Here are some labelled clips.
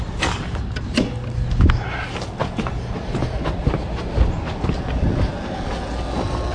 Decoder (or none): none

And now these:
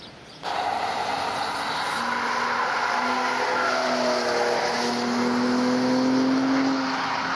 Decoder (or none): none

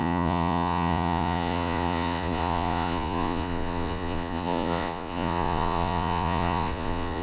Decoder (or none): vocoder, Vocos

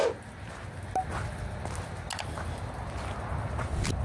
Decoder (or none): none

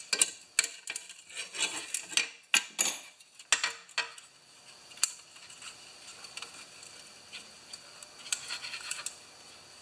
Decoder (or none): none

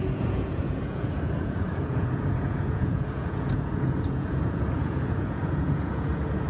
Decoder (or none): vocoder, Vocos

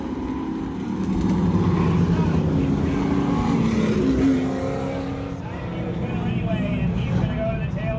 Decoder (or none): none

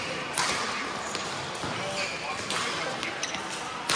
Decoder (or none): none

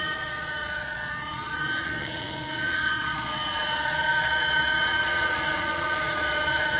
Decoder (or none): vocoder, Vocos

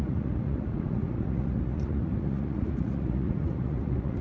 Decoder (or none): vocoder, Vocos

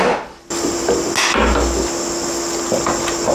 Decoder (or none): none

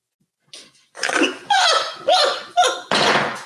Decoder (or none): vocoder, Vocos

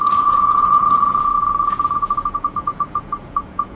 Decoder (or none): vocoder, Vocos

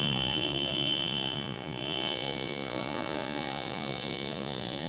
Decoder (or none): vocoder, Vocos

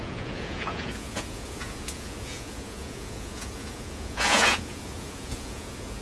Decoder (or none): vocoder, Vocos